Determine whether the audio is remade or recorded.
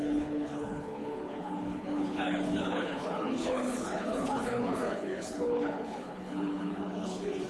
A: remade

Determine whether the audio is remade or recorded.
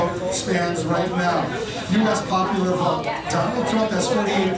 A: recorded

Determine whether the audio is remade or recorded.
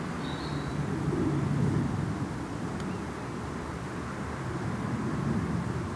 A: recorded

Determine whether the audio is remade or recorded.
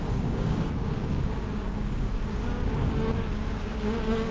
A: remade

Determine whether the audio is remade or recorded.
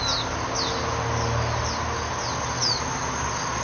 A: recorded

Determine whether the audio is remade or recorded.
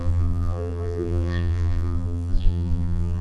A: remade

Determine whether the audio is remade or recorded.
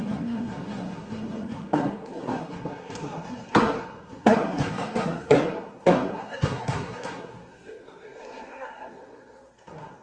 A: remade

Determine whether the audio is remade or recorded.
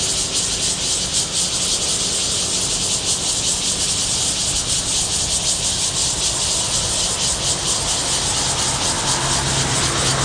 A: recorded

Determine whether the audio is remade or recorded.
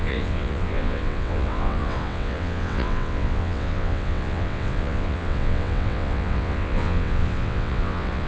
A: remade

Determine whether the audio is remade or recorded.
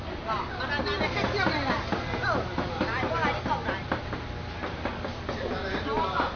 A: recorded